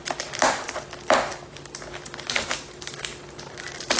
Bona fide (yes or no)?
yes